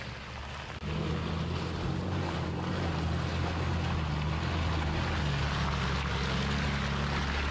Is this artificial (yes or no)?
no